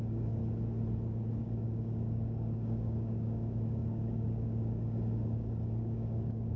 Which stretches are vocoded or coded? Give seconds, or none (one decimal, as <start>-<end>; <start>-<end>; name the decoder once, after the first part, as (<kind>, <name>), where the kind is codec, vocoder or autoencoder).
0.0-0.4 (codec, DAC); 1.4-6.6